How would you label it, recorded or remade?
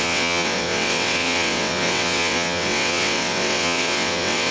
remade